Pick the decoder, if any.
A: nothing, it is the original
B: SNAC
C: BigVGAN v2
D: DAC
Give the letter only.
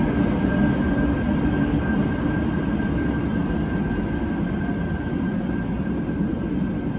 A